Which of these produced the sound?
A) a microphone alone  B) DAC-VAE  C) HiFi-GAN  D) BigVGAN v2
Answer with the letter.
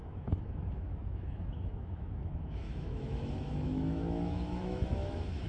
B